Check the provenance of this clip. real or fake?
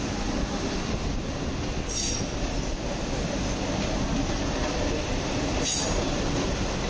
real